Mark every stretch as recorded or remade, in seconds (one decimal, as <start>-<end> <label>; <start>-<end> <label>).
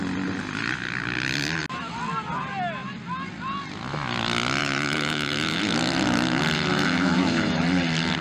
0.0-4.6 recorded; 4.6-5.6 remade; 5.6-6.7 recorded; 6.7-7.6 remade; 7.6-8.2 recorded